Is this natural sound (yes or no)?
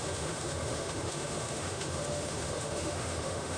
no